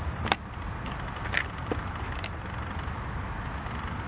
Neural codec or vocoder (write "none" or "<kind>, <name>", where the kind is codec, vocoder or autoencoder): none